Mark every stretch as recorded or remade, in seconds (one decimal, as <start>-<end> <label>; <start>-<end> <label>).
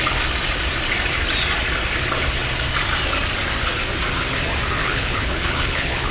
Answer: 0.0-4.8 recorded; 4.8-6.1 remade